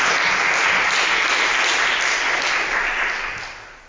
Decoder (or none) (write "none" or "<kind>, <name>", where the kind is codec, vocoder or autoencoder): none